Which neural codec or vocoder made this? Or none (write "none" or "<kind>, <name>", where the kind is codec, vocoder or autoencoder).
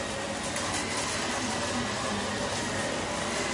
none